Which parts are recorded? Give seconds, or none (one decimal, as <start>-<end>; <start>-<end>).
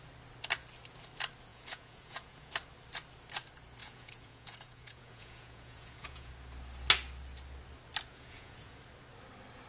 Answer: 0.0-1.5; 2.5-3.8; 6.3-8.1; 8.8-9.7